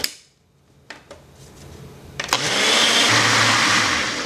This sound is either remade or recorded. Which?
recorded